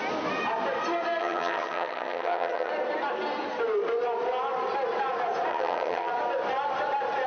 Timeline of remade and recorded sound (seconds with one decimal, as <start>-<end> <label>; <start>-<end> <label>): 0.0-1.2 recorded; 1.2-2.7 remade; 2.7-5.5 recorded; 5.5-6.1 remade; 6.1-7.3 recorded